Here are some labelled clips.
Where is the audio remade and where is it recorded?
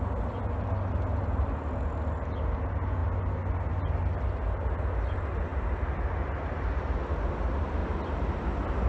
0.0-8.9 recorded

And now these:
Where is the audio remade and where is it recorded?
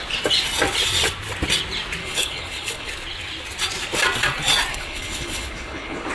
0.0-2.0 recorded; 2.0-2.9 remade; 2.9-4.7 recorded; 4.7-6.1 remade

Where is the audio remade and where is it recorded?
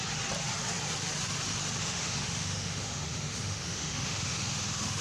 0.0-1.8 recorded; 1.8-5.0 remade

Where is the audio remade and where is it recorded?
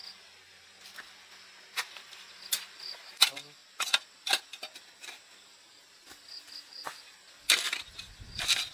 0.0-1.9 recorded; 1.9-3.6 remade; 3.6-7.8 recorded; 7.8-8.7 remade